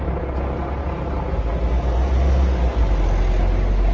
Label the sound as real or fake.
real